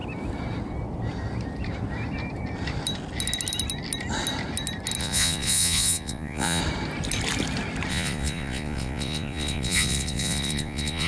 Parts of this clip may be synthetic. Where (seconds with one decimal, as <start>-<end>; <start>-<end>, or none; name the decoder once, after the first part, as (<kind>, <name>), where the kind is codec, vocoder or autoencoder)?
5.0-6.6 (vocoder, Vocos); 7.9-11.1